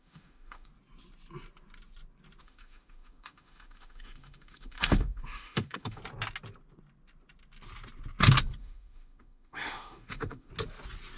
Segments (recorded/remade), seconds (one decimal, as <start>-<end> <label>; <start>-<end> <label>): 0.0-0.7 remade; 0.7-2.4 recorded; 2.4-6.0 remade; 6.0-8.6 recorded; 8.6-10.5 remade; 10.5-11.2 recorded